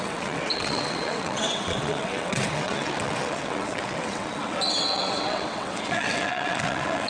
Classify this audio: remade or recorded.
remade